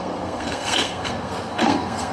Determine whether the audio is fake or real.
fake